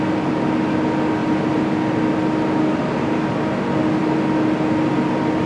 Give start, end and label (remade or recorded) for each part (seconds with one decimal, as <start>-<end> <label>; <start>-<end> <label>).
0.0-5.5 recorded